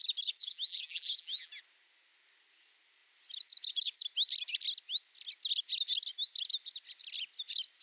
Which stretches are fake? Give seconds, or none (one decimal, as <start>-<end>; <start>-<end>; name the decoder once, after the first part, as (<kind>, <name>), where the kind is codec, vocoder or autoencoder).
0.4-1.5 (vocoder, BigVGAN v2)